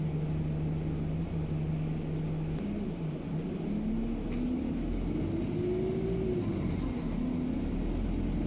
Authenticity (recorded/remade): recorded